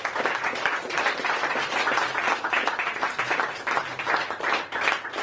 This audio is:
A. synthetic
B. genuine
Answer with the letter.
B